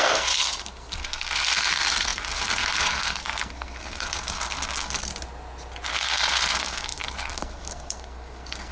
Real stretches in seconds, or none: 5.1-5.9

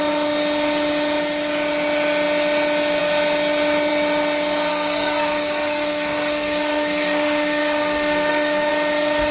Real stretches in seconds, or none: 0.0-4.7; 8.7-9.3

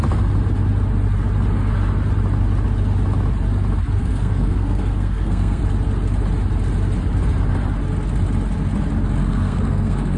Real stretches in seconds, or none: 0.0-4.0; 5.6-9.2

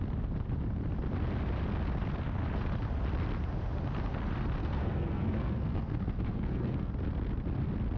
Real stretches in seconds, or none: 0.0-4.6; 6.9-8.0